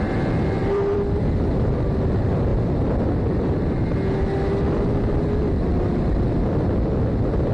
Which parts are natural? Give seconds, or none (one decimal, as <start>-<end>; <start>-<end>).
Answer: 0.0-0.6; 2.1-2.5; 3.1-5.7; 6.9-7.5